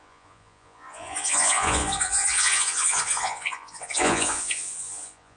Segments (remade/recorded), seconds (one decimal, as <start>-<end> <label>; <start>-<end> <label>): 0.0-5.4 remade